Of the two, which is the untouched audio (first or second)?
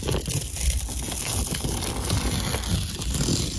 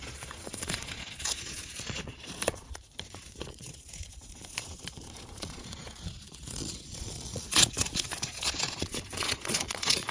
first